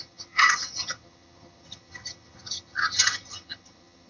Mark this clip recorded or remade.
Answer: remade